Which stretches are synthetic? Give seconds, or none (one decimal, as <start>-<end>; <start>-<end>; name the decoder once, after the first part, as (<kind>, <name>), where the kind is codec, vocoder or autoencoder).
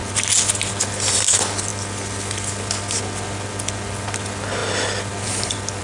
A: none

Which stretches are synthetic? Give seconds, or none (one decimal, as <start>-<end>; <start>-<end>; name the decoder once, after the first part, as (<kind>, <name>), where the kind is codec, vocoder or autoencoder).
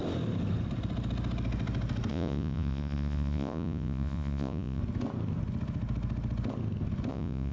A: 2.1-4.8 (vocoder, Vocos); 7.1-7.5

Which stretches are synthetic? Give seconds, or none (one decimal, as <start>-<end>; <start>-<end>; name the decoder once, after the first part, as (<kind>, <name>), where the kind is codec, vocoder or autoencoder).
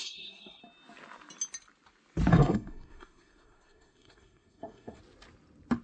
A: 0.0-0.6 (codec, SNAC); 2.3-5.0